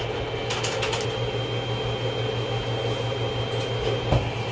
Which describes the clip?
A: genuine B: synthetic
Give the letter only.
A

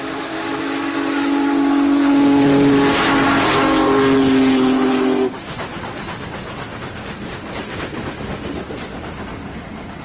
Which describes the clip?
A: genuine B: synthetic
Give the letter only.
A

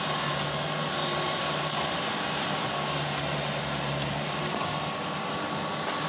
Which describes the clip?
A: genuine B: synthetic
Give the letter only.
A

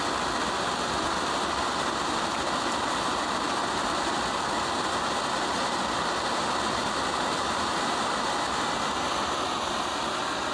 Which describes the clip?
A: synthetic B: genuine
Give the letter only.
B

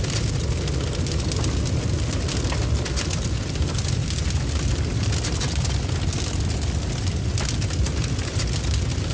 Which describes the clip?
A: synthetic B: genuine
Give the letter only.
B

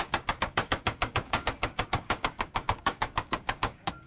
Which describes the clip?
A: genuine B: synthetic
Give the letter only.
B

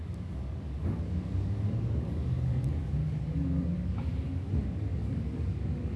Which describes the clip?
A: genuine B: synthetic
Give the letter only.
B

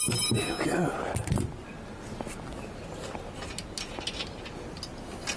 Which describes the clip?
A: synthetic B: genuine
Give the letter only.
B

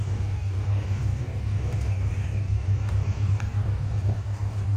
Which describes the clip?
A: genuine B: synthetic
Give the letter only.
B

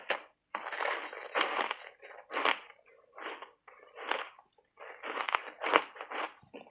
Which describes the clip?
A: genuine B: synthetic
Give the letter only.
A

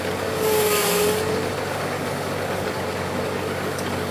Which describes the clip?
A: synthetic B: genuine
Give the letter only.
A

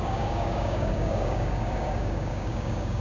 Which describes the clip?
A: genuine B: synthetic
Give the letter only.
B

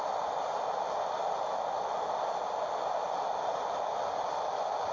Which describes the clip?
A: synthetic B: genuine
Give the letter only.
B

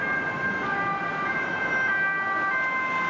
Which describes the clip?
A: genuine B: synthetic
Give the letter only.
A